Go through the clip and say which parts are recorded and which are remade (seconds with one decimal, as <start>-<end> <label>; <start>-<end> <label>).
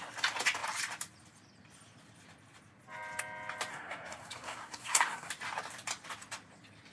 0.0-3.7 recorded; 3.7-5.3 remade; 5.3-6.9 recorded